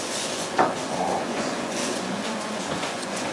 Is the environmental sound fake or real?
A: fake